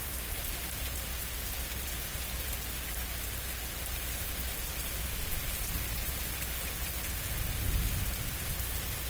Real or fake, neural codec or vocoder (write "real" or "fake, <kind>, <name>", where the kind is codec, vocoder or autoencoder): fake, vocoder, BigVGAN v2